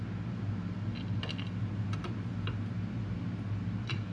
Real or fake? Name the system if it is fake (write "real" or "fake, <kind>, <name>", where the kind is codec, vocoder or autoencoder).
real